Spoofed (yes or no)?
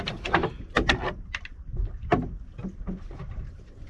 no